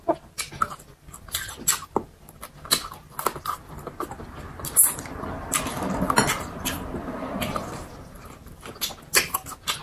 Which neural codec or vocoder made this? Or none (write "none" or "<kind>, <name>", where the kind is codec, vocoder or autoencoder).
none